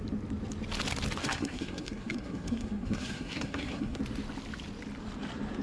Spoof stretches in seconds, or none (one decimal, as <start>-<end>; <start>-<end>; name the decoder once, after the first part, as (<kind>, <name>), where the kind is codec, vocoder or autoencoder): 1.2-4.0 (codec, SNAC)